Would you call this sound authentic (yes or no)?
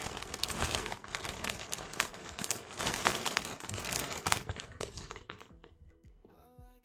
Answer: no